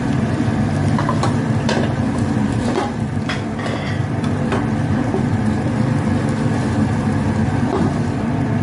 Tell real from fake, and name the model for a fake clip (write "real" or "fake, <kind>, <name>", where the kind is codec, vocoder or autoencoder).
fake, vocoder, BigVGAN v2